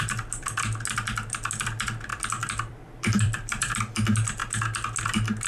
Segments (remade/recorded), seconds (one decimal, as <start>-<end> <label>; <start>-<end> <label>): 0.0-2.1 recorded; 2.1-3.8 remade; 3.8-5.5 recorded